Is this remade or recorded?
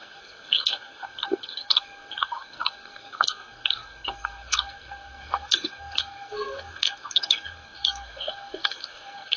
remade